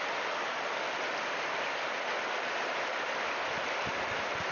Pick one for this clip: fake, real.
real